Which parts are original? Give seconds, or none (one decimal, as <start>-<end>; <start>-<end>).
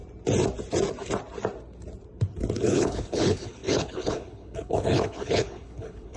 0.0-2.5